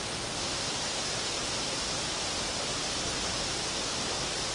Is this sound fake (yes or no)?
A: no